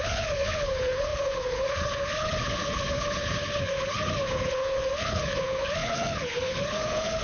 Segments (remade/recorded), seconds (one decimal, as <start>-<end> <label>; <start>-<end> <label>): 0.0-7.2 remade